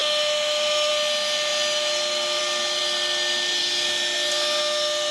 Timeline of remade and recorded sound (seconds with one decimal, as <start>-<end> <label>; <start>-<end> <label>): 0.0-5.1 recorded